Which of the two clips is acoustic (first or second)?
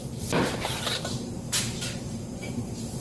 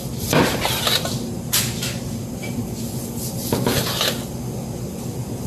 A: second